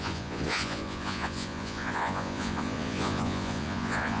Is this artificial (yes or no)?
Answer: yes